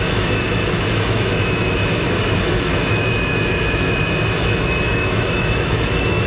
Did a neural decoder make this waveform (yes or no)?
yes